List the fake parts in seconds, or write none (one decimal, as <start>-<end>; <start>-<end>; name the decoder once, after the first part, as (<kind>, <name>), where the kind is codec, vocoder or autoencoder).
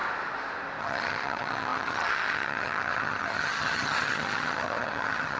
0.8-5.4 (vocoder, HiFi-GAN)